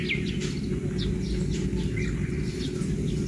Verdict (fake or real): real